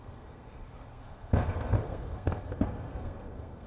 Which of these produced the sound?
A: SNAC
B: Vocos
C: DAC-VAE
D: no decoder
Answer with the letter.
A